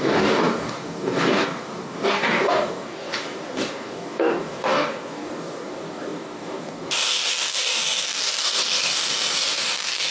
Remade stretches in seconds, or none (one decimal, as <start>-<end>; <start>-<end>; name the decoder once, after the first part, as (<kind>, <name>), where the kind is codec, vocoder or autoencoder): 0.0-10.1 (codec, DAC)